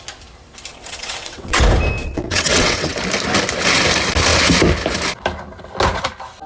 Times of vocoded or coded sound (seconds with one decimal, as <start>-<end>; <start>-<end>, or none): 0.7-1.6; 2.0-3.0